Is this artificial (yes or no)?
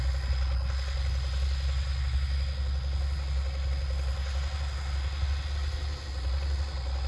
no